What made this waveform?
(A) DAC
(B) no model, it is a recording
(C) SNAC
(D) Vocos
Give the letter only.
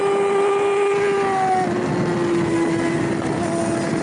B